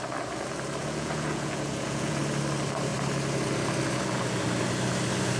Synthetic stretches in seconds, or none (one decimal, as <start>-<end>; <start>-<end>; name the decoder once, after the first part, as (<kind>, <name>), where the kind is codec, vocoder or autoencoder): 0.8-2.2 (vocoder, Vocos)